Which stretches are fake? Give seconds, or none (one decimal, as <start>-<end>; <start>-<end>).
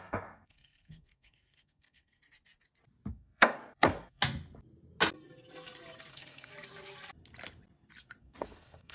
0.0-2.2; 3.1-4.2; 6.1-6.5; 8.2-8.9